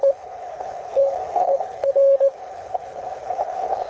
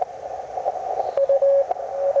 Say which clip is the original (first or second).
second